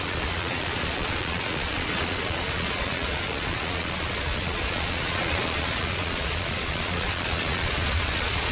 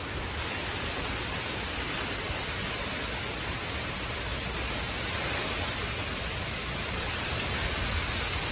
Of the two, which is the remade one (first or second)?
first